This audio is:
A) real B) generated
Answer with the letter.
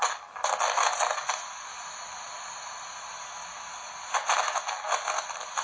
A